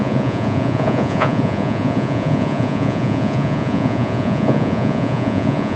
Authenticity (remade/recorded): remade